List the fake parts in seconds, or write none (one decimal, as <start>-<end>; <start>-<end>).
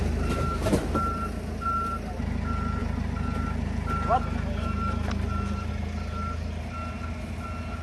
none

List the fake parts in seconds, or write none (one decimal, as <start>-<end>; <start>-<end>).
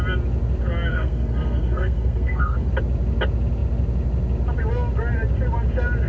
0.9-2.7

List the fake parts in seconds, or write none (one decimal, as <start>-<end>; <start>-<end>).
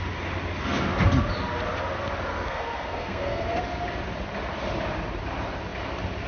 2.3-3.6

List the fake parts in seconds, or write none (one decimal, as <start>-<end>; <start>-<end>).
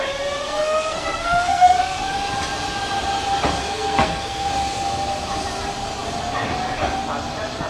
0.4-2.1; 3.6-4.5